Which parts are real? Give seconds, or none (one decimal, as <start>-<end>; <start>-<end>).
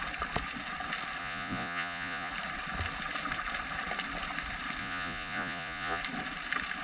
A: 0.0-1.2; 2.3-4.8; 6.0-6.8